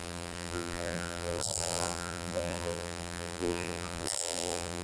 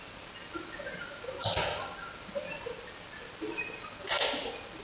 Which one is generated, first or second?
first